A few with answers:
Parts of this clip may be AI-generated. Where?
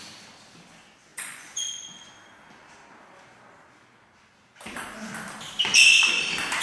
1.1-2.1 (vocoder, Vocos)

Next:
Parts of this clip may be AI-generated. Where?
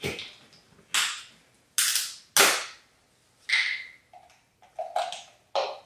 none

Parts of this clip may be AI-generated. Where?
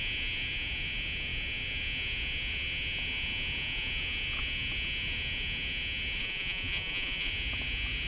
6.2-7.3 (vocoder, Vocos)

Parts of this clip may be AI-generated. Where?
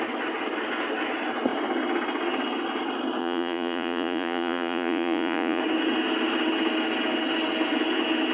3.2-5.6 (vocoder, Vocos)